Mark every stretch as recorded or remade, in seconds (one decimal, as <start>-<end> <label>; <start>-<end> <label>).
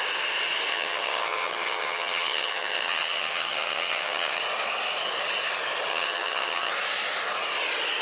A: 0.0-0.7 recorded; 0.7-4.4 remade; 4.4-5.9 recorded; 5.9-6.7 remade; 6.7-8.0 recorded